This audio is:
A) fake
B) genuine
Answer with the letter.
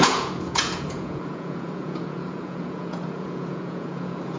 A